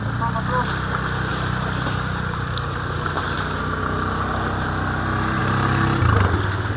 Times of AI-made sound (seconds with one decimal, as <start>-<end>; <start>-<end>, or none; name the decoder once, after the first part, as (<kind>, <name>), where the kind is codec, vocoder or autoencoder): 1.3-3.2 (vocoder, BigVGAN v2); 5.4-6.0